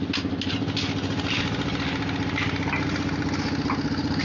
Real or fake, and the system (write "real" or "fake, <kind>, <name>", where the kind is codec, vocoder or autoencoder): real